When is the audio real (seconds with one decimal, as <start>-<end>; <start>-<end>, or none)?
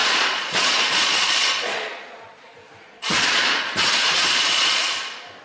4.8-5.4